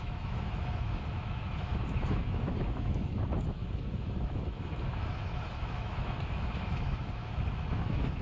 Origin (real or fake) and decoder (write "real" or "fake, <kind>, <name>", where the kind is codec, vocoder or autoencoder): fake, autoencoder, DAC-VAE